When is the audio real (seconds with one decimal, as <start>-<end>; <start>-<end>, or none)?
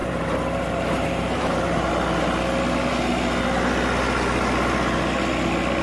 1.9-5.8